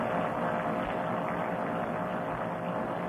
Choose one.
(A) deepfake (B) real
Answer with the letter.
B